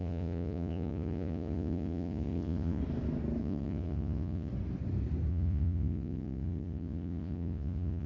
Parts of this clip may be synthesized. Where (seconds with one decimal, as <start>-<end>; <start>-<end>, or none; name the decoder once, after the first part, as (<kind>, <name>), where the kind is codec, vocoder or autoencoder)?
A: 0.0-2.8 (vocoder, Vocos); 3.4-4.5; 5.3-8.1